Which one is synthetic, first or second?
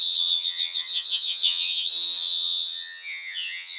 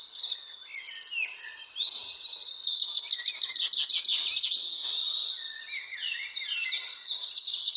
first